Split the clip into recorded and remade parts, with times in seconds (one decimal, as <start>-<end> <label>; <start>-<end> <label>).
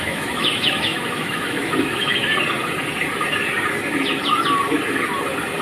0.0-2.2 remade; 2.2-5.6 recorded